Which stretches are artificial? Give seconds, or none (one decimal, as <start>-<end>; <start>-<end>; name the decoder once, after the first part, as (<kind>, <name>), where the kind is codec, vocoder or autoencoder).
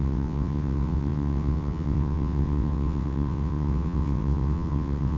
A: 0.0-5.2 (vocoder, WaveNeXt)